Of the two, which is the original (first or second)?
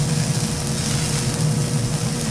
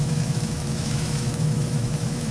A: first